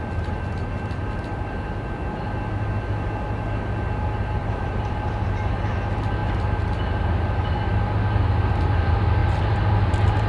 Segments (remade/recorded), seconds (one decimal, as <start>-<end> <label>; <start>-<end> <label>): 0.0-4.4 recorded; 4.4-5.7 remade; 5.7-10.3 recorded